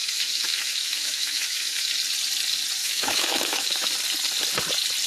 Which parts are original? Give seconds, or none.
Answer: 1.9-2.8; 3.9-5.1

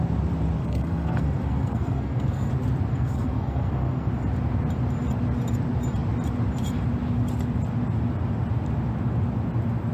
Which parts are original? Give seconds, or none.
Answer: 0.0-0.6; 2.5-2.9; 4.1-9.9

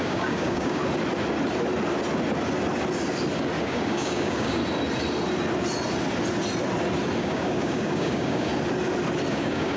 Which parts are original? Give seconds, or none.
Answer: 0.8-3.6; 4.6-7.2; 8.5-9.3

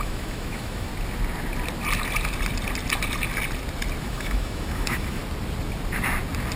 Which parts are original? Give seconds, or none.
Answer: 0.9-4.0; 5.2-6.6

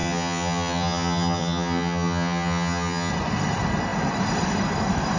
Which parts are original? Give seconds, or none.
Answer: 3.1-5.2